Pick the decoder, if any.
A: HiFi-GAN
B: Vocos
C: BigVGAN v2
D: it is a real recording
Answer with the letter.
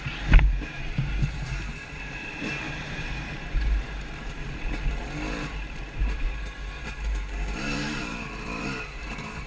C